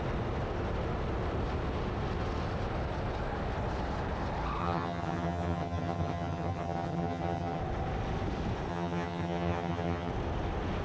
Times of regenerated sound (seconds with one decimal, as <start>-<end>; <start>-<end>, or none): 4.6-7.6; 8.7-10.1